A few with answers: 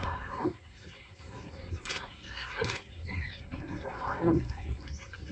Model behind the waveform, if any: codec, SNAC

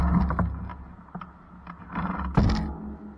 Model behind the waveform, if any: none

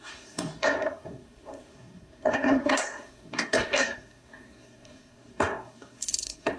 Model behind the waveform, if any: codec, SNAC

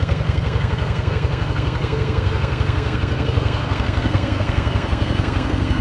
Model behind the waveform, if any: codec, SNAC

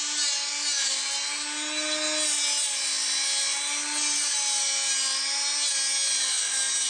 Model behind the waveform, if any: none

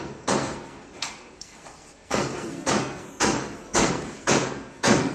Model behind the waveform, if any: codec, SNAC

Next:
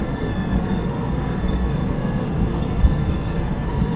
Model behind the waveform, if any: codec, SNAC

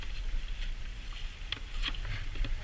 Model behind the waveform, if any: none